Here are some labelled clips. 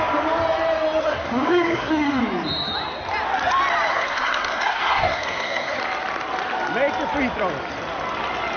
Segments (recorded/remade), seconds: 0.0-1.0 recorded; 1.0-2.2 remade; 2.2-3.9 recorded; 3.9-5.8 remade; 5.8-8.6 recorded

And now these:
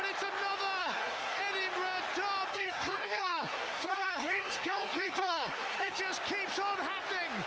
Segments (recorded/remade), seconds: 0.0-0.8 recorded; 0.8-1.4 remade; 1.4-2.5 recorded; 2.5-6.0 remade; 6.0-7.5 recorded

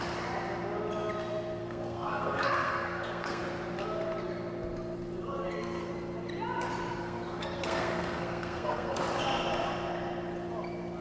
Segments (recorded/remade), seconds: 0.0-1.6 recorded; 1.6-3.4 remade; 3.4-5.4 recorded; 5.4-5.9 remade; 5.9-7.0 recorded; 7.0-9.0 remade; 9.0-11.0 recorded

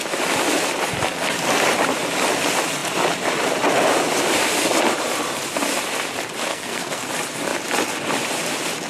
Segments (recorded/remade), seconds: 0.0-6.5 recorded; 6.5-7.1 remade; 7.1-8.9 recorded

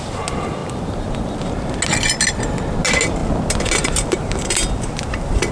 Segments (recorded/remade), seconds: 0.0-5.5 recorded